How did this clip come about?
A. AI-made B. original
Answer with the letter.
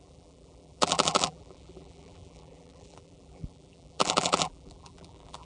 A